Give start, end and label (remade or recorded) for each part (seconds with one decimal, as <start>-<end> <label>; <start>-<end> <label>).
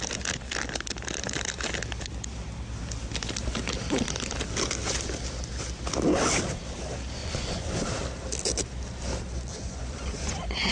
0.0-7.2 recorded; 7.2-7.7 remade; 7.7-9.5 recorded; 9.5-10.7 remade